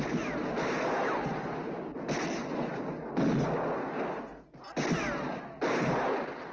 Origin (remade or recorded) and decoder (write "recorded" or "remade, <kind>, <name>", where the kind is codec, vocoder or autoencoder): recorded